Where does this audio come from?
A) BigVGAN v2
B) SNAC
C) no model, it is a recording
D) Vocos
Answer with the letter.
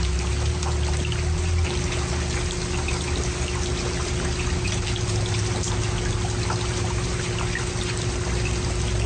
C